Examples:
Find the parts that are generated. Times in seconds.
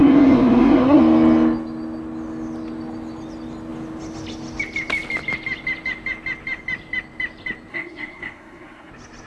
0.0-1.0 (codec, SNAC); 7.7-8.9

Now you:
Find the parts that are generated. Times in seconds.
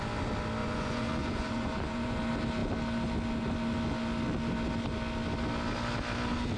0.6-2.2 (vocoder, Vocos)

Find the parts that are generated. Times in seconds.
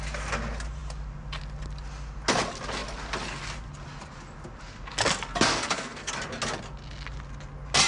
5.5-6.1 (codec, SNAC)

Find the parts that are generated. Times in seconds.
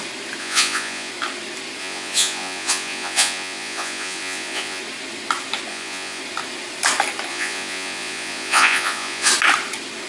0.4-1.1 (vocoder, Vocos); 1.8-4.8; 5.7-6.2; 7.3-9.3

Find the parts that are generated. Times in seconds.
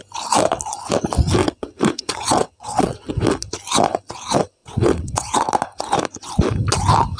1.4-3.1 (vocoder, WaveNeXt); 4.6-5.5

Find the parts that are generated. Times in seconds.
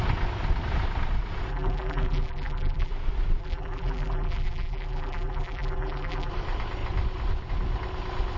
1.5-2.9 (vocoder, BigVGAN v2); 3.4-6.3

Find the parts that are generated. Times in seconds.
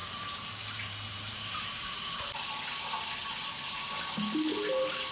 0.0-2.2 (vocoder, BigVGAN v2)